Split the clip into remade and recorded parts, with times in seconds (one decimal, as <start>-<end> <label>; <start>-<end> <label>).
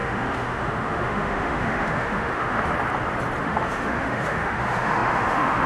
0.0-2.7 remade; 2.7-3.4 recorded; 3.4-5.7 remade